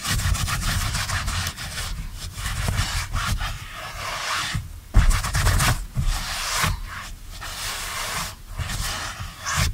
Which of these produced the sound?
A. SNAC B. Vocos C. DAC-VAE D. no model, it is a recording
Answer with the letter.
D